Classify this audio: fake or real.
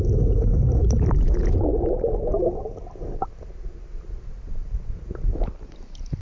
real